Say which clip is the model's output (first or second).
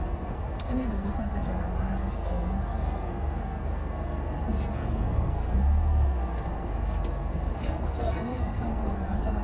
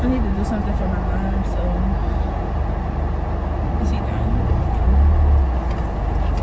first